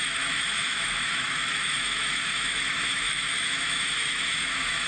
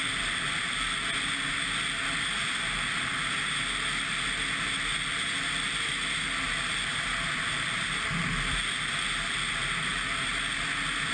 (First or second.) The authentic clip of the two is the second